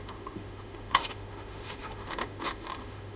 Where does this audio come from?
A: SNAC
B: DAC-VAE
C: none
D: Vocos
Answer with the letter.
B